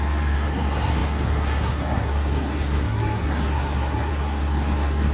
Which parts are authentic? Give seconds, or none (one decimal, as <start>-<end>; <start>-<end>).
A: none